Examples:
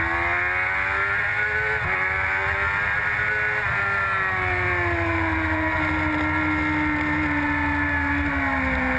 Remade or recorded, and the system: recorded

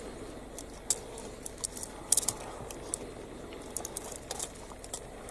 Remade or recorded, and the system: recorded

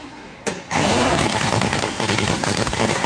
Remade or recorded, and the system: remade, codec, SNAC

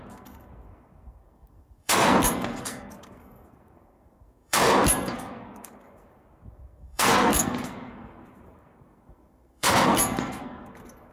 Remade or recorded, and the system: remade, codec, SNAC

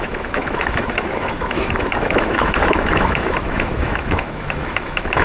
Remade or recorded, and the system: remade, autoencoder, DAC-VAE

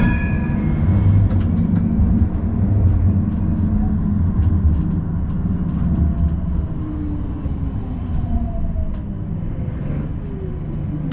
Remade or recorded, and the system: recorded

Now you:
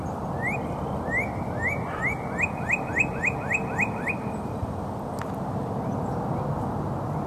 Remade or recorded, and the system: recorded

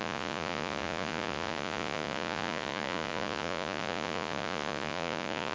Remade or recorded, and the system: remade, vocoder, Vocos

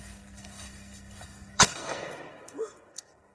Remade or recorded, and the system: remade, codec, SNAC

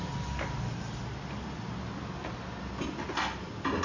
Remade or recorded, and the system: recorded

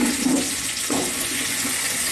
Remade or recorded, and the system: remade, vocoder, Vocos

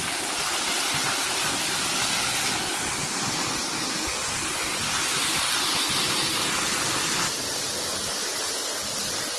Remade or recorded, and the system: recorded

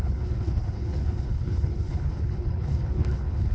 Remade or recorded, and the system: remade, codec, HILCodec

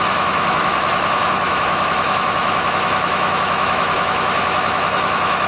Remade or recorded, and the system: remade, autoencoder, DAC-VAE